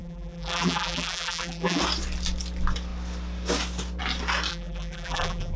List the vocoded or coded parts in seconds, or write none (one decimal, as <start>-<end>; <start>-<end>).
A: 0.0-1.8; 4.5-5.6

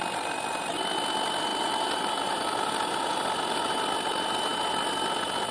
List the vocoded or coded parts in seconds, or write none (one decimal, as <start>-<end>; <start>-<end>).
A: none